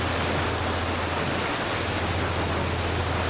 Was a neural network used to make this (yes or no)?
no